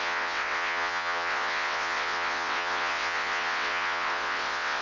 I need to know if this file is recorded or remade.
remade